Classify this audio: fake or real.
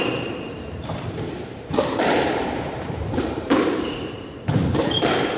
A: fake